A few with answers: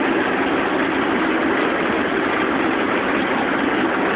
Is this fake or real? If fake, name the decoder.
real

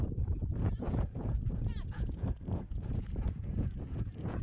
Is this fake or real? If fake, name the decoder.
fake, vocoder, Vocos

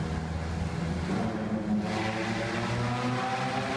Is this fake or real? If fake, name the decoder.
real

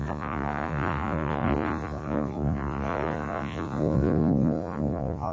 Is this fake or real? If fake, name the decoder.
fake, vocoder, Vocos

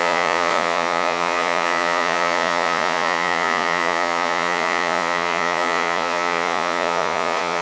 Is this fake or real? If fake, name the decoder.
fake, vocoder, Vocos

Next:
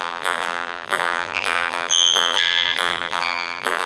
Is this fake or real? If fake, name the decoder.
fake, vocoder, BigVGAN v2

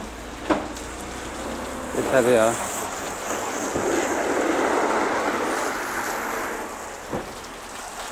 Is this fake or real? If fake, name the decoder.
real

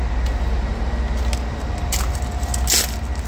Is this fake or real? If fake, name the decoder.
real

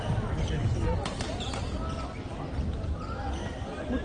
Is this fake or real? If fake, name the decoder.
real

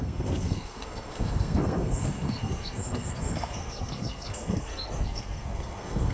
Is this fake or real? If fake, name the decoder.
fake, codec, SNAC